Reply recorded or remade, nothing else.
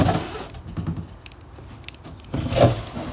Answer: recorded